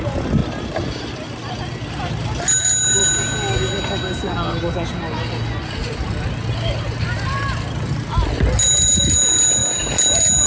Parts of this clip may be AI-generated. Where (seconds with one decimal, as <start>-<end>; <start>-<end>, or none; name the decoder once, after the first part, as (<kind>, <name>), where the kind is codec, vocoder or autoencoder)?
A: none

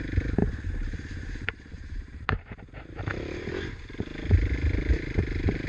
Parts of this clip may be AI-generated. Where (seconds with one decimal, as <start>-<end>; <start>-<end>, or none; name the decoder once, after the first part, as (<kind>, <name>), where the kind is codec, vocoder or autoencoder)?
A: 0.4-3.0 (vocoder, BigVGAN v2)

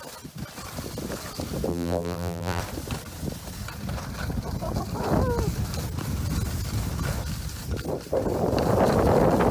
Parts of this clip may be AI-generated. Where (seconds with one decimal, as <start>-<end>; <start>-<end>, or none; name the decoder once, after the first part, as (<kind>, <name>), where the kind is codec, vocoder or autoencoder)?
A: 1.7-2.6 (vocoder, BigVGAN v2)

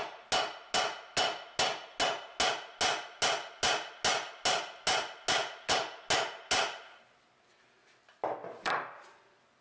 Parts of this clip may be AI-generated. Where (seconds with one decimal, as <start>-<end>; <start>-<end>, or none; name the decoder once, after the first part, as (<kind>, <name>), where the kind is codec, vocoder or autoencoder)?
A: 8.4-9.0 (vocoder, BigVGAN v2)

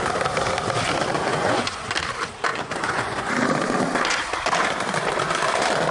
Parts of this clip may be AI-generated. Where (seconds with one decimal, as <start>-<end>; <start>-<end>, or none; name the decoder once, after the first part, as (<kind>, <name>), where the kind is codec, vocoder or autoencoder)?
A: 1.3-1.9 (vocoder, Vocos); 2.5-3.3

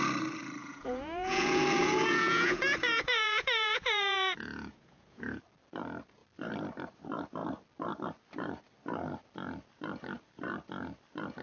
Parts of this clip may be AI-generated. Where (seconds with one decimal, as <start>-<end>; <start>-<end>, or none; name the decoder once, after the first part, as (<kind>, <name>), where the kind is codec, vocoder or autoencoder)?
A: 0.6-5.4 (vocoder, Vocos)

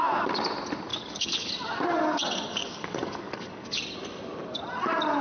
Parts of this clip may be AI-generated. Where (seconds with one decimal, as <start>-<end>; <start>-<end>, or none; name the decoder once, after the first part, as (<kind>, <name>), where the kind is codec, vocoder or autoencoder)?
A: 0.9-1.5 (codec, DAC); 2.6-3.8